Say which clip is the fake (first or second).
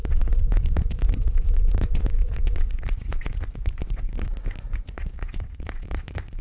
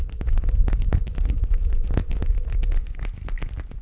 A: first